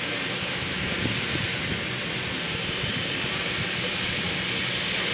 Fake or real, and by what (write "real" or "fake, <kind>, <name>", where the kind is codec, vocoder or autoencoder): real